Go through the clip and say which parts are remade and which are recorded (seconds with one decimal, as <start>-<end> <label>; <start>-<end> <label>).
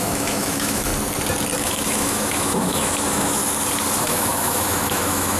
0.0-0.9 remade; 0.9-1.6 recorded; 1.6-3.4 remade; 3.4-4.0 recorded; 4.0-5.4 remade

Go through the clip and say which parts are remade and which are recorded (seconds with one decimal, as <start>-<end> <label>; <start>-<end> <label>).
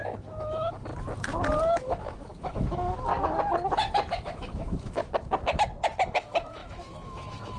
0.0-0.9 remade; 0.9-1.6 recorded; 1.6-3.1 remade; 3.1-4.1 recorded; 4.1-5.0 remade; 5.0-6.1 recorded; 6.1-7.6 remade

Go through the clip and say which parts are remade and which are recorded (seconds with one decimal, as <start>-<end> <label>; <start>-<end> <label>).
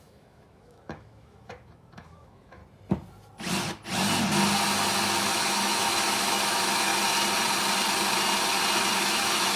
0.0-2.6 remade; 2.6-5.3 recorded; 5.3-6.9 remade; 6.9-9.0 recorded; 9.0-9.6 remade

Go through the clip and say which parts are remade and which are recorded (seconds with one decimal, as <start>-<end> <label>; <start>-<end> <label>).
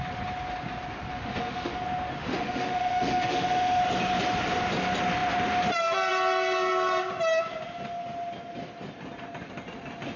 0.0-1.1 recorded; 1.1-1.8 remade; 1.8-2.2 recorded; 2.2-3.8 remade; 3.8-10.2 recorded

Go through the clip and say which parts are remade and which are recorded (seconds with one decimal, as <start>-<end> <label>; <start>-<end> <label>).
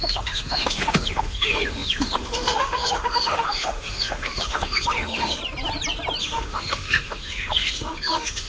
0.0-5.4 remade; 5.4-6.2 recorded; 6.2-8.5 remade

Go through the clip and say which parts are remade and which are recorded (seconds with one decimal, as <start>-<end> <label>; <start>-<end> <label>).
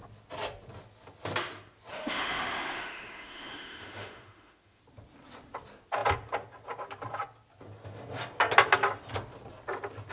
0.0-1.9 recorded; 1.9-4.8 remade; 4.8-10.1 recorded